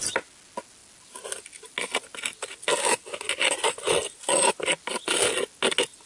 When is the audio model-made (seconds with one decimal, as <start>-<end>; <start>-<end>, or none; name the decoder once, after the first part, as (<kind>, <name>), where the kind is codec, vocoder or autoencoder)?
none